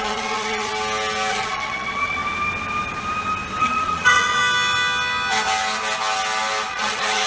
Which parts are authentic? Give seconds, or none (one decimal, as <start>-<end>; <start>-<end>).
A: 0.7-1.3; 2.2-3.6; 4.4-6.7